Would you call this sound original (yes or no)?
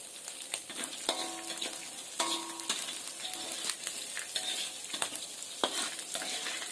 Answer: yes